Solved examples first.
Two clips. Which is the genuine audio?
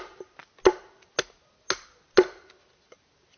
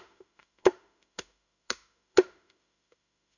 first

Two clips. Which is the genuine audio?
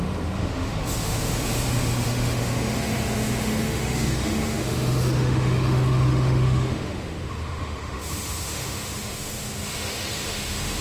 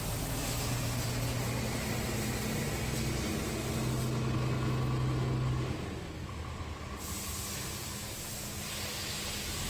second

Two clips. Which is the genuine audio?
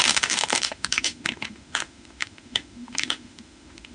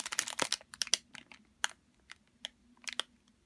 second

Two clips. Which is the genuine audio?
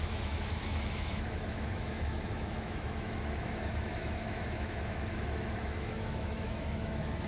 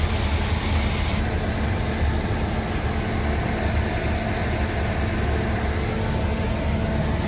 second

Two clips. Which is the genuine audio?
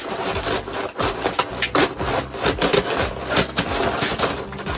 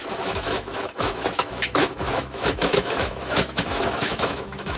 first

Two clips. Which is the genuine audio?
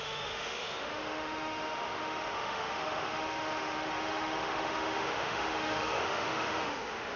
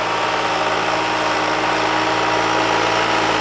second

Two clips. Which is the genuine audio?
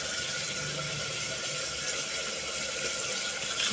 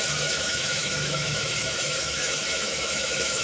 first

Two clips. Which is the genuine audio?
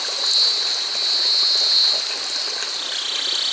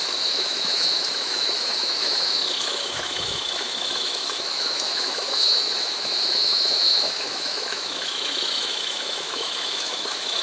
first